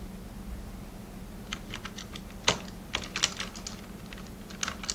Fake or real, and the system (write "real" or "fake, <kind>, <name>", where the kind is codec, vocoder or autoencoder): real